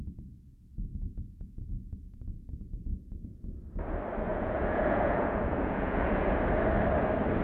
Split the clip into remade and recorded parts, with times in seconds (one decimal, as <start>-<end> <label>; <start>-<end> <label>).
0.0-0.9 recorded; 0.9-1.7 remade; 1.7-4.3 recorded; 4.3-6.3 remade; 6.3-7.4 recorded